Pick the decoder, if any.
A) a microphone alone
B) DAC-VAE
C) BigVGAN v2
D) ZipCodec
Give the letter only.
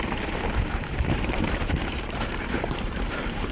C